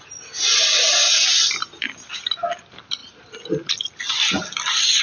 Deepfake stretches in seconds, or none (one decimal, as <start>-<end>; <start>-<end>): none